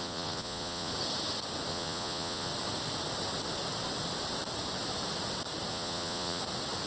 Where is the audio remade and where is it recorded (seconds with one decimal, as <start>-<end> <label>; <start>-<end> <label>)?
0.0-0.9 remade; 0.9-1.7 recorded; 1.7-2.5 remade; 2.5-5.7 recorded; 5.7-6.4 remade; 6.4-6.9 recorded